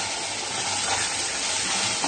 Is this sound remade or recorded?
recorded